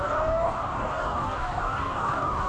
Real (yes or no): no